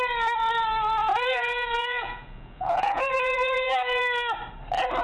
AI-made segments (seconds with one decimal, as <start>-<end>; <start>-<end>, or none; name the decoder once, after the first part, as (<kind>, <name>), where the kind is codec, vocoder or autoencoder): 1.0-4.0 (vocoder, Vocos)